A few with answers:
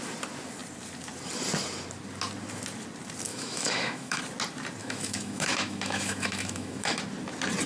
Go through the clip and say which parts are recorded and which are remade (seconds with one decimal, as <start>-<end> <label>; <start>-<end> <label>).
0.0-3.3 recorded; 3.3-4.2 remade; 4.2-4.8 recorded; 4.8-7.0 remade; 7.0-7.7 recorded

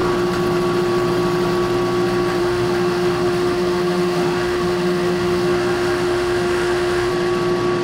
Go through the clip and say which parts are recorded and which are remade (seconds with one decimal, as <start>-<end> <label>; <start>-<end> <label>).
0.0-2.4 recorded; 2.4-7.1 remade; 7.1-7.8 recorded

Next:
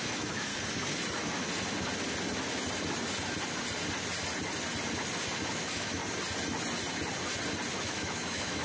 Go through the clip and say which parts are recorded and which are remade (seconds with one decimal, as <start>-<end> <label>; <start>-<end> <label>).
0.0-0.5 remade; 0.5-5.4 recorded; 5.4-6.0 remade; 6.0-7.8 recorded; 7.8-8.6 remade

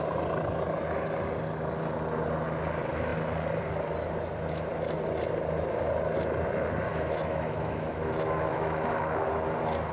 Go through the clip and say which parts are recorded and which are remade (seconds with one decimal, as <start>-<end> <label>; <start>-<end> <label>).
0.0-6.9 recorded; 6.9-9.3 remade; 9.3-9.9 recorded

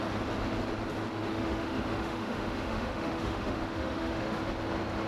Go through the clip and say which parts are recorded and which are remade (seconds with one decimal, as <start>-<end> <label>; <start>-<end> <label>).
0.0-1.3 recorded; 1.3-4.4 remade; 4.4-5.1 recorded

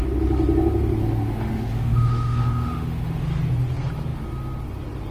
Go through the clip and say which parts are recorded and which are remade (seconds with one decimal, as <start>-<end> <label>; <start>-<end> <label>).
0.0-1.0 recorded; 1.0-3.2 remade; 3.2-5.1 recorded

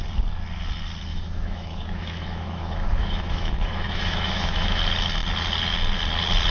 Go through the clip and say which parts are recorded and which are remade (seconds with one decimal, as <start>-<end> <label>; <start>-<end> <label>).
0.0-1.1 recorded; 1.1-4.8 remade; 4.8-6.5 recorded